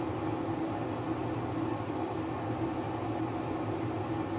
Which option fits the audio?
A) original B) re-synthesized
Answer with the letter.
A